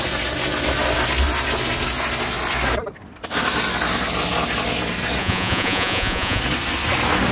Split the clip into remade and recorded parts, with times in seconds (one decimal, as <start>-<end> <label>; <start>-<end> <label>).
0.0-5.2 recorded; 5.2-6.4 remade; 6.4-7.3 recorded